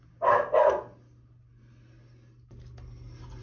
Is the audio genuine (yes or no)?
yes